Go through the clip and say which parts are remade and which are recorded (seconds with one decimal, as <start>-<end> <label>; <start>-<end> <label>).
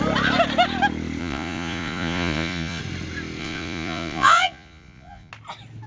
0.0-1.2 recorded; 1.2-2.8 remade; 2.8-3.4 recorded; 3.4-5.3 remade; 5.3-5.9 recorded